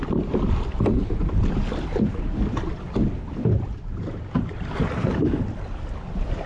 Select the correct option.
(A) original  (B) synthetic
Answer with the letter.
A